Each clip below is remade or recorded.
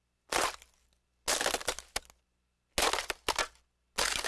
recorded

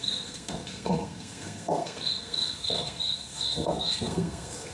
remade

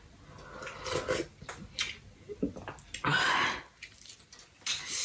recorded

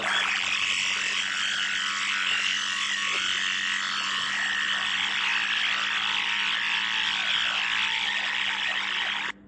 recorded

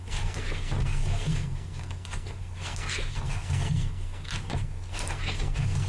remade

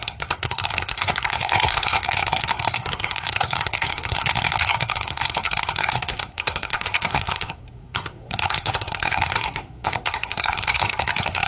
remade